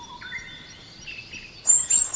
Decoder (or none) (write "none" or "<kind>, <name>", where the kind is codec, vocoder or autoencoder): none